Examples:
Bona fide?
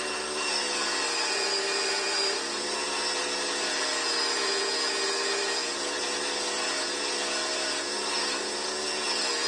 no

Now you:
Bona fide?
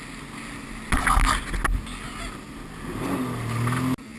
yes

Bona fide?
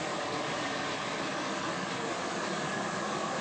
no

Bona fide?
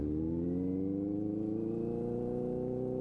yes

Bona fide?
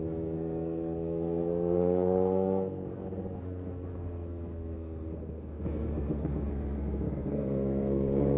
no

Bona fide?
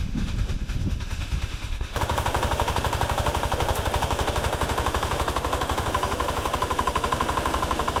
no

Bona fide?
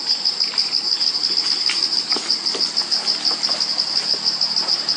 yes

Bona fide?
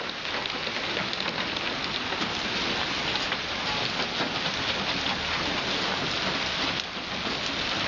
yes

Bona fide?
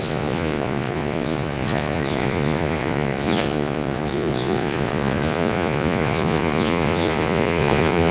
no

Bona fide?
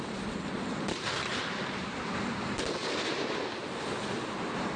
yes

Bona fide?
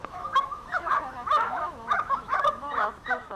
no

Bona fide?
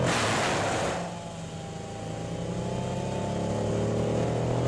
yes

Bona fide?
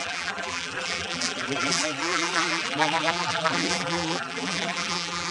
no